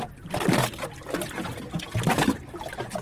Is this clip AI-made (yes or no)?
no